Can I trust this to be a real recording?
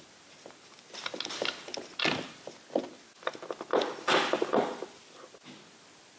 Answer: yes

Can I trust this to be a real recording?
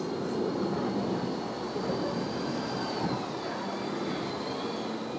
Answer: yes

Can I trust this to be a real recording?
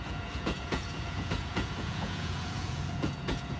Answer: no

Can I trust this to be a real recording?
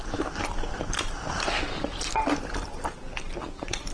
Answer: yes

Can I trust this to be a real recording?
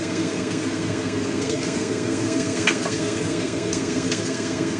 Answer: no